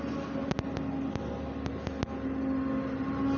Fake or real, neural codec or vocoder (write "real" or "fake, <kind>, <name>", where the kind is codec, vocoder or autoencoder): real